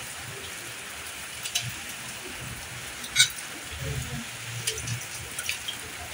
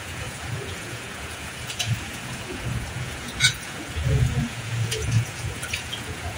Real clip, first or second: first